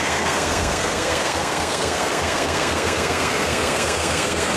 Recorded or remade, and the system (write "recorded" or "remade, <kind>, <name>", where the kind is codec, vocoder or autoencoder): remade, codec, SNAC